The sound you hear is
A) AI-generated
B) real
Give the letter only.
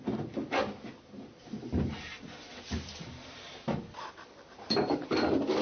B